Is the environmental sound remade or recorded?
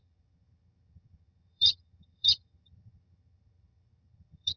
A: remade